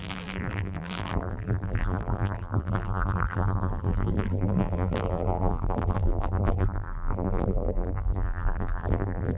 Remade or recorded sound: remade